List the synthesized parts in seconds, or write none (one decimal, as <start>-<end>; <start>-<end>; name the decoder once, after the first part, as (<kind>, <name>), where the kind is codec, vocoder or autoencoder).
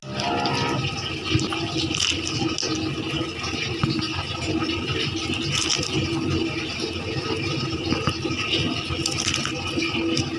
none